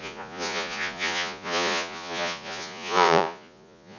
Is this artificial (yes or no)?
yes